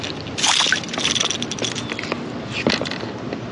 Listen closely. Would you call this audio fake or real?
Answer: real